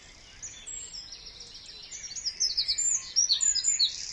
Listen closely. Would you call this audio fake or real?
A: real